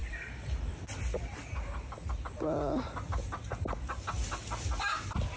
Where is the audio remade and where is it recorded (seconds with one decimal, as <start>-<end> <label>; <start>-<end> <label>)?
0.0-0.7 remade; 0.7-5.4 recorded